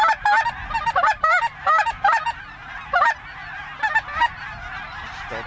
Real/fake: fake